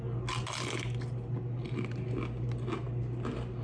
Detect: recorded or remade recorded